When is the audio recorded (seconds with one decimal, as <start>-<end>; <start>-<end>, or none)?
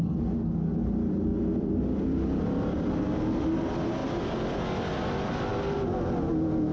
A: 0.0-1.3; 3.4-6.7